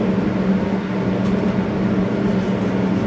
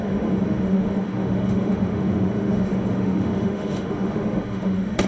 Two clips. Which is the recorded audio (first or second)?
first